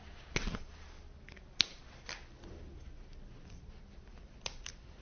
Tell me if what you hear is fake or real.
real